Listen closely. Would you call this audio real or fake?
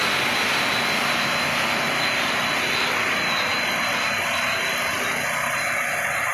real